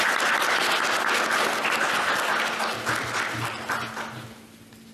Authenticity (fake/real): real